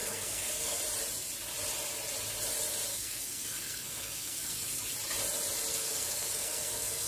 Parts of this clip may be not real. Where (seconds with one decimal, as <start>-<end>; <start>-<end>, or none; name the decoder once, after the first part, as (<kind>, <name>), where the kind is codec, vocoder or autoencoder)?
0.0-0.8 (codec, SNAC); 2.9-4.8; 5.7-7.1